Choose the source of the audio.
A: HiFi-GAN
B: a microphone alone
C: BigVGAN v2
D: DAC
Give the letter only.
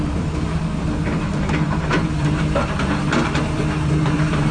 C